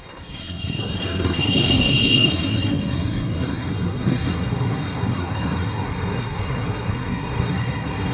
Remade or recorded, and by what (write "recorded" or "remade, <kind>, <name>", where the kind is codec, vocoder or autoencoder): remade, codec, SNAC